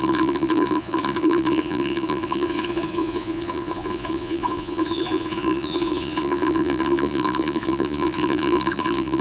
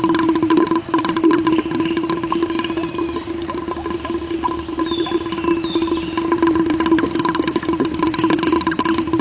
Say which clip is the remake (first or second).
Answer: first